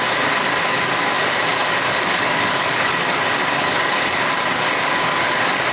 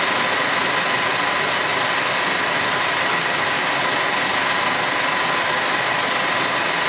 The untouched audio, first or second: second